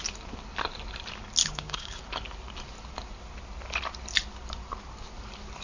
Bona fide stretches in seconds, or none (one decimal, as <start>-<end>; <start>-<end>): 0.0-1.4; 2.0-5.6